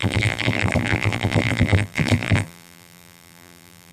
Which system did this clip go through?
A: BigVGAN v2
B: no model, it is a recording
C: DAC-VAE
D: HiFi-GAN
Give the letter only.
A